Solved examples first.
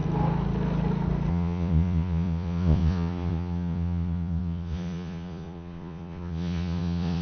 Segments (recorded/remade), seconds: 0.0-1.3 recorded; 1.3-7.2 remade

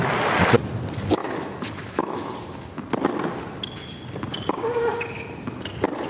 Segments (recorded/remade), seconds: 0.0-1.2 recorded; 1.2-2.3 remade; 2.3-6.1 recorded

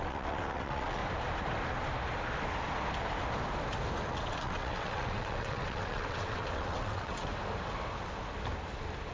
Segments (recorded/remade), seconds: 0.0-1.0 remade; 1.0-4.1 recorded; 4.1-7.3 remade; 7.3-9.1 recorded

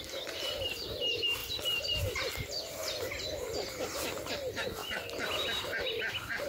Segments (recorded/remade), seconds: 0.0-6.5 recorded